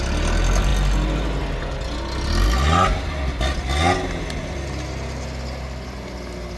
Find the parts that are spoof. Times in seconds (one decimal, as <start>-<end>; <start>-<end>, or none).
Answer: none